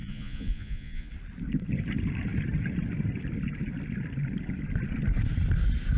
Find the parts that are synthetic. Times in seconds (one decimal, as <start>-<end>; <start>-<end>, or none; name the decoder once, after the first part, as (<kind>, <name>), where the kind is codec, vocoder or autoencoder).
0.0-1.1 (vocoder, Vocos)